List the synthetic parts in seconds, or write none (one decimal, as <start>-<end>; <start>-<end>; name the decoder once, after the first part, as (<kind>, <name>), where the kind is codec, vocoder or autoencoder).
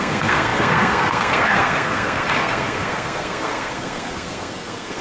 0.0-5.0 (codec, SNAC)